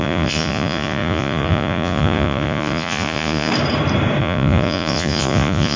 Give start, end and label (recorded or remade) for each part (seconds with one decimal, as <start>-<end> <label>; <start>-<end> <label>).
0.0-3.5 remade; 3.5-4.2 recorded; 4.2-5.8 remade